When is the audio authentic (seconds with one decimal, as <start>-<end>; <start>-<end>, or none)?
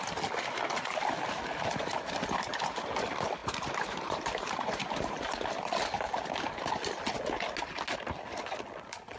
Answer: 0.0-3.4; 5.2-9.2